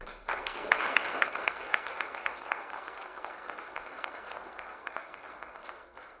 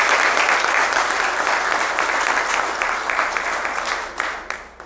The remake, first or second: first